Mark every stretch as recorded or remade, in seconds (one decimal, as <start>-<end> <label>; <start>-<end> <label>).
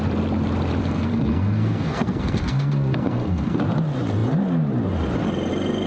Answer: 0.0-0.8 recorded; 0.8-3.6 remade; 3.6-5.9 recorded